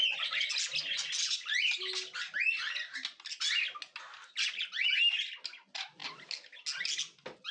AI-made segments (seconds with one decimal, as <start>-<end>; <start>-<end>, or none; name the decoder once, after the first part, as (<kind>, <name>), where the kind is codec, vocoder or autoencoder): none